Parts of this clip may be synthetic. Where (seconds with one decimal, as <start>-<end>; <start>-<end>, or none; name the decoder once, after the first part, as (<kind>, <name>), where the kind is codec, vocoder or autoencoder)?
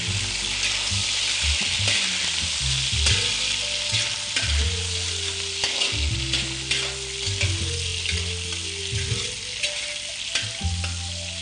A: none